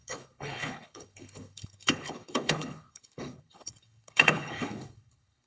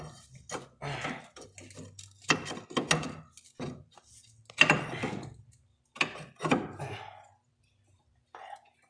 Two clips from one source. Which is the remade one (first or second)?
first